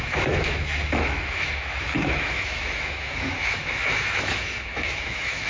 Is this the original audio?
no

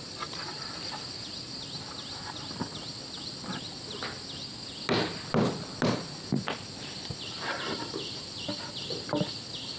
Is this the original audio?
yes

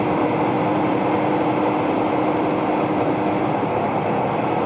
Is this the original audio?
yes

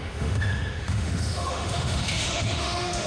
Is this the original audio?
no